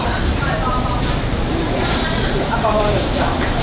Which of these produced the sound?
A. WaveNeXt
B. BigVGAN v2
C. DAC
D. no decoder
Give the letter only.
B